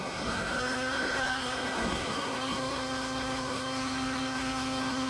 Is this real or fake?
fake